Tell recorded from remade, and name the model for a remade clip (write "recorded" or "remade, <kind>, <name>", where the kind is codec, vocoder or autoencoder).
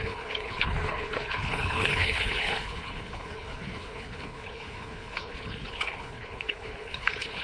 remade, codec, HILCodec